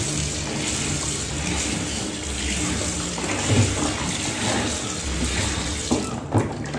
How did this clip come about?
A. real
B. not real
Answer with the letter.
A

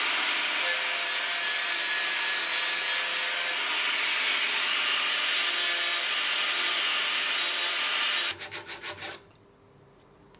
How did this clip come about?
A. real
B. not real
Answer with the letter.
A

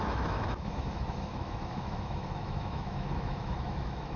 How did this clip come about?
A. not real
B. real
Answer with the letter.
A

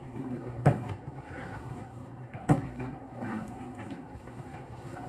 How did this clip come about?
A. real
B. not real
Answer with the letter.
B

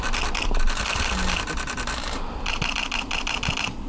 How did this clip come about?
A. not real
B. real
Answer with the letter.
B